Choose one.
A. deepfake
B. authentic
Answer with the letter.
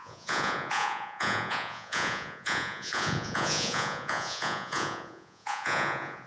A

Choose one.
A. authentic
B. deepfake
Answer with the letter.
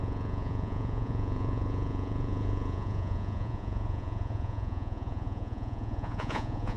B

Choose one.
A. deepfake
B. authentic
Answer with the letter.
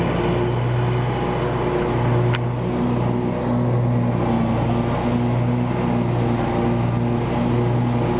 B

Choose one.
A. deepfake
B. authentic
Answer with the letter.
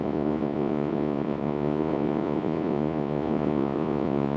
A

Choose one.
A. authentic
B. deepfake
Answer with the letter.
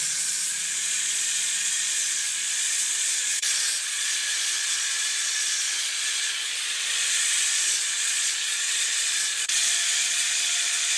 B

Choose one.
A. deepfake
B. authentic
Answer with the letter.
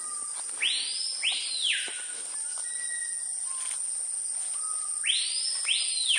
B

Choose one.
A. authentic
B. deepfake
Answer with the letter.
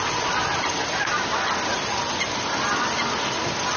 A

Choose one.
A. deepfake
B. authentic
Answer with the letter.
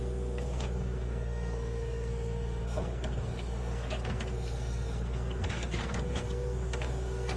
A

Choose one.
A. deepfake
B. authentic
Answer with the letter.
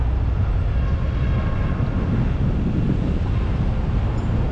B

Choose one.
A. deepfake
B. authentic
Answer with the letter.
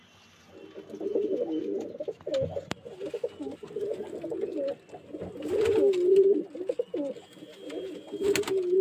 B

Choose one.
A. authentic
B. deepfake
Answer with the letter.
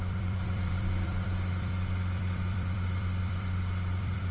B